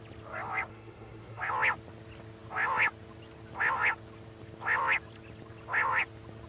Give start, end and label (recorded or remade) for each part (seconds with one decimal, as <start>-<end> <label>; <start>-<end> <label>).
0.0-0.7 recorded; 0.7-1.4 remade; 1.4-6.5 recorded